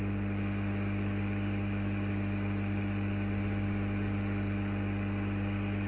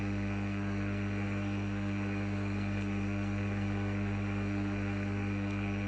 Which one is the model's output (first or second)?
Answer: second